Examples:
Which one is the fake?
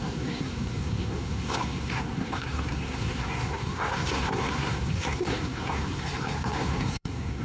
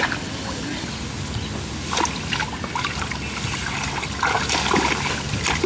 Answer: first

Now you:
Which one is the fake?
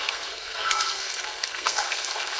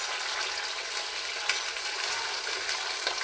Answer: first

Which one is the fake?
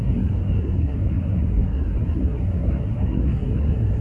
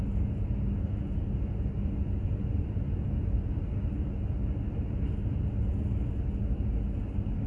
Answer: first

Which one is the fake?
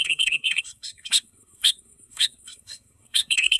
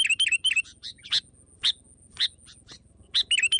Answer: first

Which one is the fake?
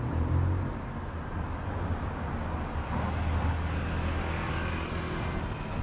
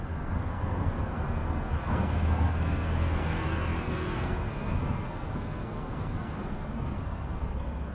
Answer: second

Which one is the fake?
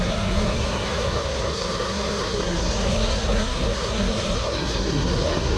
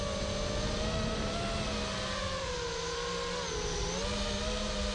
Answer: first